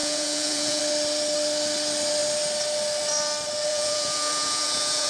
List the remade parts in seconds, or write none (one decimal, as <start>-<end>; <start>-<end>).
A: 0.0-0.8; 3.7-5.1

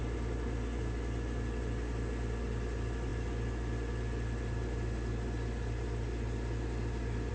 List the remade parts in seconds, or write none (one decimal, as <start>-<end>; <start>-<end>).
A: none

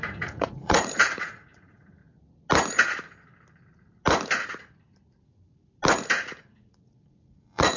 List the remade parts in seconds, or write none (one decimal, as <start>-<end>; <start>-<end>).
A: 0.0-2.0; 6.4-7.8

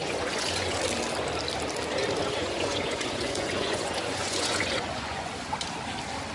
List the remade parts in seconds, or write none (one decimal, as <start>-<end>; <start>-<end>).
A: 0.0-0.8; 2.2-5.3

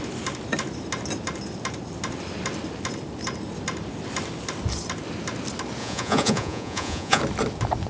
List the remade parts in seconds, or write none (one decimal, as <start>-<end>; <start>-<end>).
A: 5.8-7.2